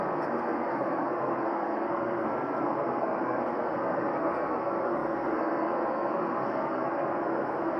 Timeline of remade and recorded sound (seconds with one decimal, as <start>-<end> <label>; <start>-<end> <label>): 0.0-7.8 remade